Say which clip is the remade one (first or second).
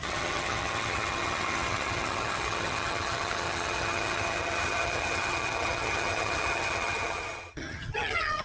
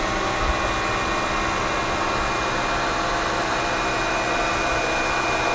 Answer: first